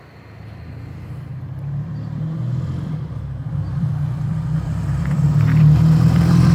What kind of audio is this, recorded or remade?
remade